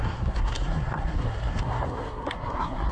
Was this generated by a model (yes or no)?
yes